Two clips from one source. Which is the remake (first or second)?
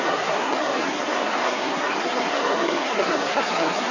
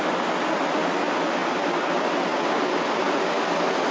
first